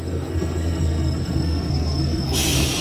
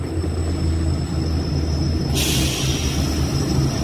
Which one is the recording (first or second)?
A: second